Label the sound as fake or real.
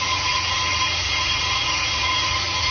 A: fake